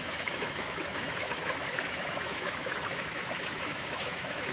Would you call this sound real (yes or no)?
no